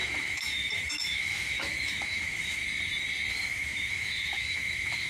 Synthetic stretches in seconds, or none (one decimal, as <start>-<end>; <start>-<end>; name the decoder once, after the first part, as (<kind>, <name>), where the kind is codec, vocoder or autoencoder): 0.0-2.6 (autoencoder, DAC-VAE); 3.3-5.1